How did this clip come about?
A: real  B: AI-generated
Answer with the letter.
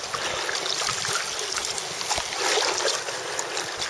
A